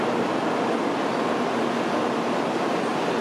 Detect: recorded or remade recorded